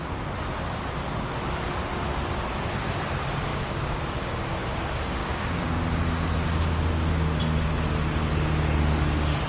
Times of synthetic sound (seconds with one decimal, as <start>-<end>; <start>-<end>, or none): 3.5-4.5; 5.2-5.8